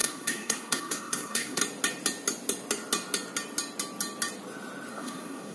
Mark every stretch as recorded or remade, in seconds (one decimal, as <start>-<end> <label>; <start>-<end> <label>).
0.0-1.6 remade; 1.6-4.9 recorded; 4.9-5.5 remade